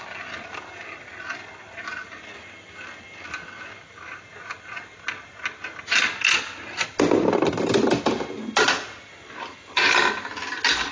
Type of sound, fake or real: real